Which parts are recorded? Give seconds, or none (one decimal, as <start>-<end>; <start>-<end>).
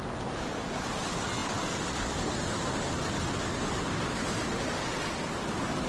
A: 0.0-5.9